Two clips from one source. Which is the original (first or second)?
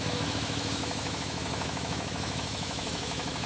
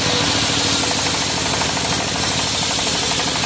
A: second